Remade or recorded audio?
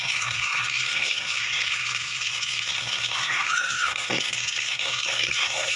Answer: remade